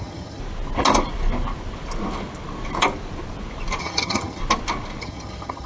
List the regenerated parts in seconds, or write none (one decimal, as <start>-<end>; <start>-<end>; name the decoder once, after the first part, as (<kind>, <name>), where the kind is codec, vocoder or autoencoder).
0.0-0.4 (vocoder, HiFi-GAN); 3.8-4.4; 5.0-5.7